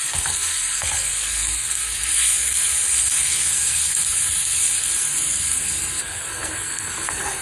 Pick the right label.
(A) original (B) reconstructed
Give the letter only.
B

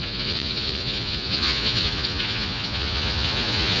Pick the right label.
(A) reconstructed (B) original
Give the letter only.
A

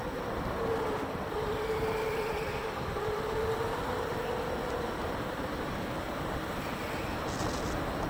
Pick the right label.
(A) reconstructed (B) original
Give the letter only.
B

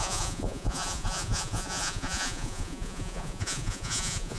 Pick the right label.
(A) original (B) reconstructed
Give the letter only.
B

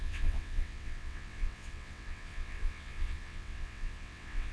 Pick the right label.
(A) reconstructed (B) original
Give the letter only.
A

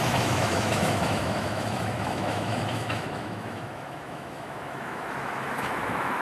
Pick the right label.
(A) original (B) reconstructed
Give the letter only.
B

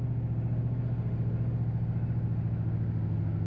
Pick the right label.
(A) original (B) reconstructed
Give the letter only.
A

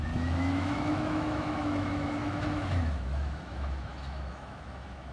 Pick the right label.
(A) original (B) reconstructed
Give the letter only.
B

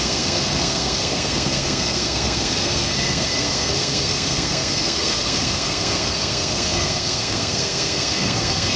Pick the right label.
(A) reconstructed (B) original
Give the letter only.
A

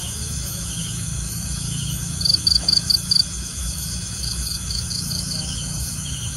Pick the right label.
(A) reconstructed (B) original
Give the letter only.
A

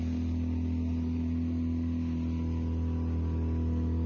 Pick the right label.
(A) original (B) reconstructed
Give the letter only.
A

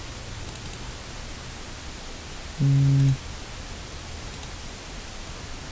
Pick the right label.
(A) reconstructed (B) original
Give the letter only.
B